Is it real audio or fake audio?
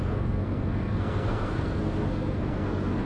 fake